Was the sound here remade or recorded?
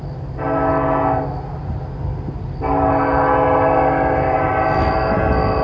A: recorded